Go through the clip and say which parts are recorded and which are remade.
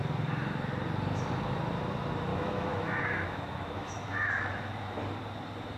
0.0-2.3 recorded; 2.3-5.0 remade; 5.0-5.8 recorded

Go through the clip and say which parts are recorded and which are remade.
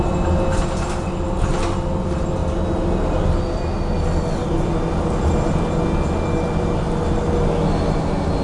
0.0-8.4 recorded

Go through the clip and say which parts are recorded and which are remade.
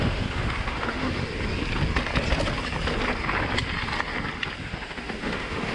0.0-1.2 remade; 1.2-4.6 recorded; 4.6-5.7 remade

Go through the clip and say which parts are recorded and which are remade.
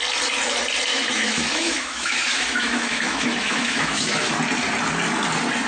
0.0-0.9 recorded; 0.9-4.3 remade; 4.3-5.7 recorded